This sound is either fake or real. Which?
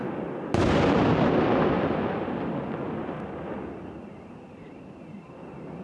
real